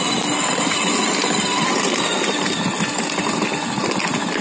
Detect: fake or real real